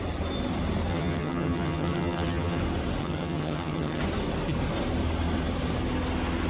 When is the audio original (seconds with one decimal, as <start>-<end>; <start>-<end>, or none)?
0.0-0.9; 2.6-3.0; 4.0-6.5